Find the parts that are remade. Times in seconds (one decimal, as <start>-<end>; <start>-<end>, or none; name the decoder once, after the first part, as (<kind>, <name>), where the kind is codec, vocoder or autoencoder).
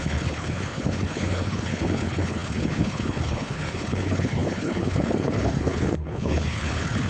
0.0-7.1 (codec, HILCodec)